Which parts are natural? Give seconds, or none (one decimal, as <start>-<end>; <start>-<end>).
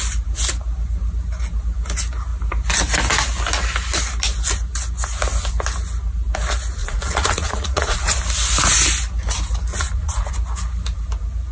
0.0-6.8; 8.2-9.7; 10.3-11.5